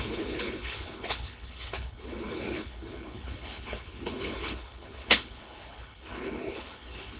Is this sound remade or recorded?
remade